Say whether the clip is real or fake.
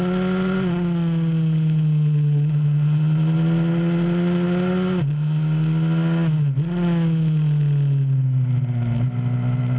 real